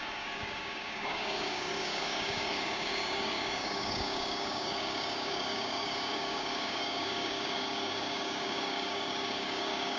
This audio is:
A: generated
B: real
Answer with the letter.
A